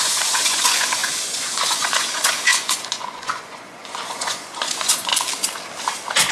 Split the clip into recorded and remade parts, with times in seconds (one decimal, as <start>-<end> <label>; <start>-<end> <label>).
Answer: 0.0-5.1 remade; 5.1-6.3 recorded